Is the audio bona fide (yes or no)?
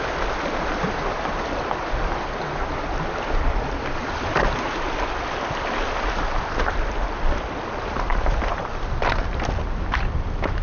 yes